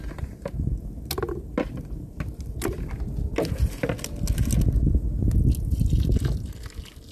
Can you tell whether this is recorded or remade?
recorded